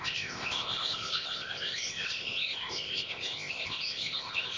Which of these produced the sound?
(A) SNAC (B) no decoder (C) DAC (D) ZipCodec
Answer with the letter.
D